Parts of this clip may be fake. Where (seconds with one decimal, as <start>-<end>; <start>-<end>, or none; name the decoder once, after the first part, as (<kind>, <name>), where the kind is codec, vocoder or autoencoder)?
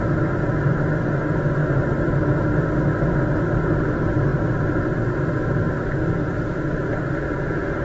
none